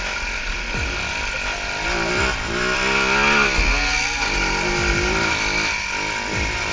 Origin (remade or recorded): recorded